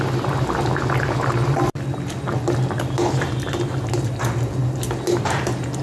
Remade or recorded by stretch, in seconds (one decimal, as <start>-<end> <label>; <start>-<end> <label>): 0.0-5.8 recorded